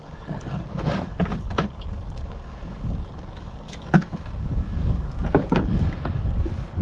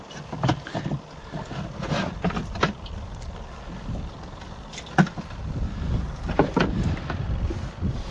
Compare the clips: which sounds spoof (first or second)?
first